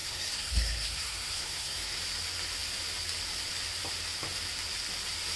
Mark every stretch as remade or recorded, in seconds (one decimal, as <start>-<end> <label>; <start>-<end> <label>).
0.0-2.0 remade; 2.0-5.4 recorded